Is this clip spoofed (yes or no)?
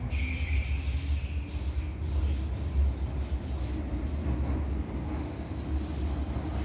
no